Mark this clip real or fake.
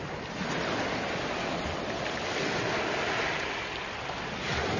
real